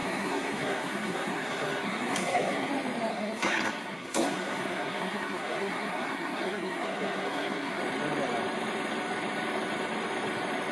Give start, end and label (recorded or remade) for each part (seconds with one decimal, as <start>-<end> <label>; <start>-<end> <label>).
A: 0.0-2.7 remade; 2.7-3.1 recorded; 3.1-7.8 remade; 7.8-10.7 recorded